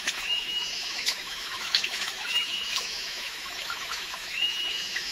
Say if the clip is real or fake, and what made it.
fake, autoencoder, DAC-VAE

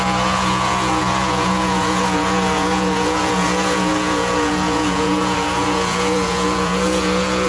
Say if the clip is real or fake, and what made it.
fake, vocoder, Vocos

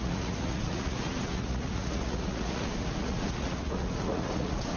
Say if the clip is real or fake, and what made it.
fake, vocoder, Vocos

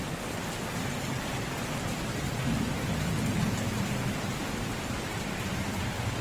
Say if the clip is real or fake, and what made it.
fake, vocoder, BigVGAN v2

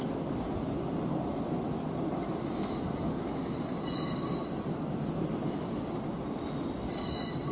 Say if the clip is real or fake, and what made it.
real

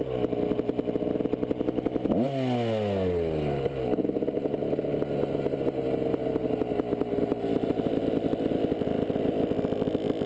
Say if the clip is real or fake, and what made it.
real